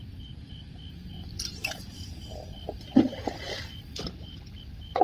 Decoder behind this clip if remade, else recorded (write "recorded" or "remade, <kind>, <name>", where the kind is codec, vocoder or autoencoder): recorded